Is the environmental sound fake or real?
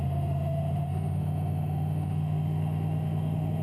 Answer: fake